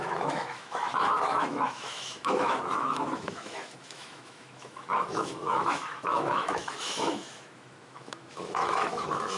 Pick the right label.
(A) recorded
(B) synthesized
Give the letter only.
B